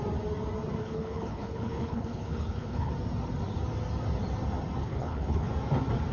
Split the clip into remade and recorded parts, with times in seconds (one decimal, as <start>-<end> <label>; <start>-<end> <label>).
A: 0.0-0.8 recorded; 0.8-2.9 remade; 2.9-4.8 recorded; 4.8-5.5 remade; 5.5-6.1 recorded